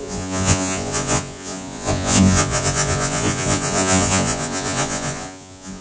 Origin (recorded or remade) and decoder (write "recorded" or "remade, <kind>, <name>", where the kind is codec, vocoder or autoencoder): remade, vocoder, Vocos